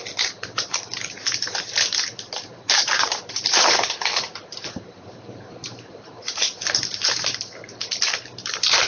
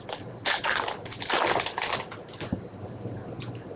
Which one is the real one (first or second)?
second